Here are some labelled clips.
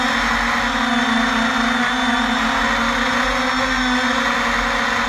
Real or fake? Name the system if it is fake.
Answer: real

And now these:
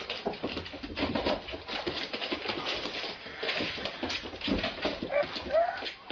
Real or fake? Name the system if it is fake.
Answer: real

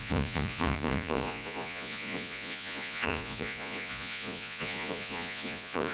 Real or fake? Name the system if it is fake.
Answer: fake, vocoder, Vocos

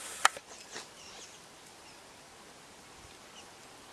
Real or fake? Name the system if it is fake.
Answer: real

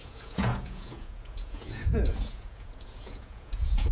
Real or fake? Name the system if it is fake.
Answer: fake, vocoder, Vocos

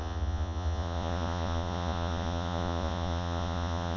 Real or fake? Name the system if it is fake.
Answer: fake, vocoder, Vocos